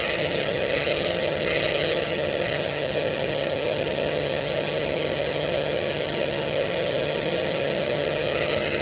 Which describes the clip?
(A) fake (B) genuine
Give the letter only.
A